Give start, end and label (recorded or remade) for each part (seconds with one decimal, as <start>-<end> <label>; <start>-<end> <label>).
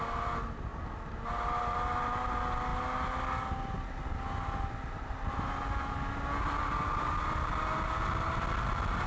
0.0-9.1 recorded